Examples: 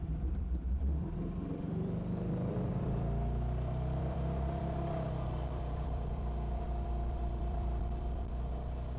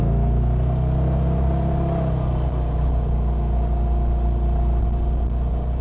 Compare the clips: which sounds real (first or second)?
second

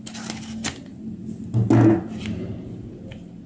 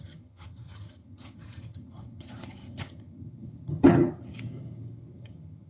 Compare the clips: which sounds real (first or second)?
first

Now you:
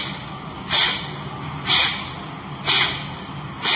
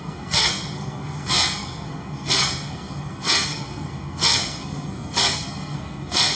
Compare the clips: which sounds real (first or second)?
first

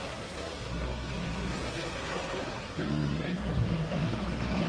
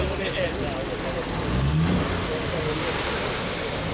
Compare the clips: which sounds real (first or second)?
second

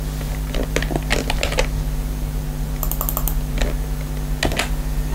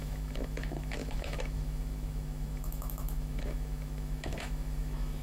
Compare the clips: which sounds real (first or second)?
first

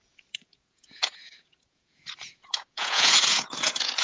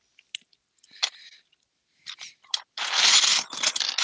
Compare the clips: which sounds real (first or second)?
second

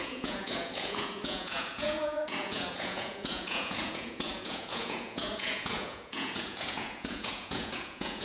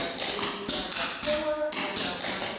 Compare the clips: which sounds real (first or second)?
second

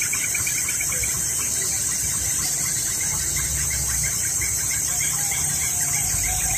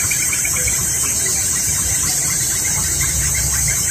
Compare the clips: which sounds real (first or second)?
first